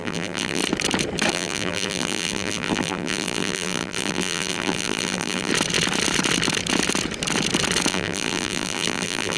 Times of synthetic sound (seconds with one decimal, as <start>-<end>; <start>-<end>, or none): 0.0-0.6; 1.3-5.5; 7.9-9.4